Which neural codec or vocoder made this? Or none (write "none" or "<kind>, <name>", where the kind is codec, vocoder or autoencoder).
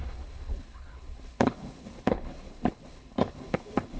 codec, HILCodec